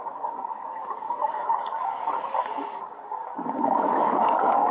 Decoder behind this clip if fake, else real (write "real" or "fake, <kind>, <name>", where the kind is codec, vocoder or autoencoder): fake, codec, DAC